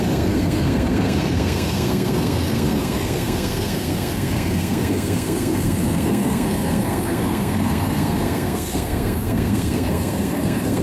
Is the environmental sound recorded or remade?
remade